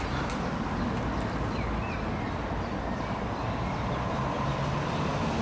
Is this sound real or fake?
real